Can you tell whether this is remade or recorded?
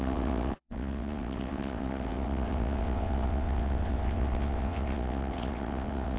remade